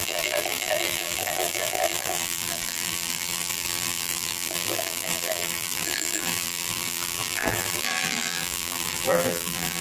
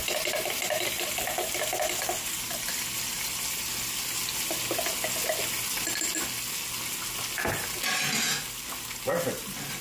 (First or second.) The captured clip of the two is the second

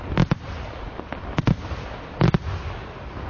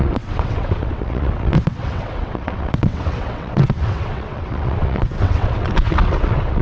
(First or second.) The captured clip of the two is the first